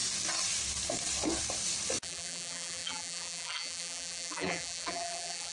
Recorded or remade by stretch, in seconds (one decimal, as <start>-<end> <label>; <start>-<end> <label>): 0.0-2.0 recorded; 2.0-5.5 remade